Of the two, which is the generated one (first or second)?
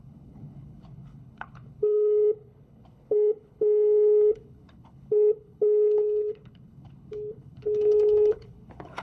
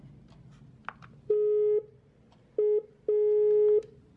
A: first